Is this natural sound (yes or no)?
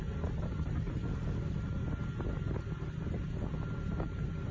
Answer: yes